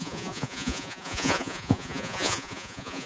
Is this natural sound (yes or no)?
no